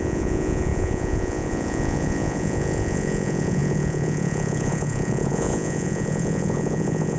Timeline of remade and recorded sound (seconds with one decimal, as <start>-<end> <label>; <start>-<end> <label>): 0.0-7.2 remade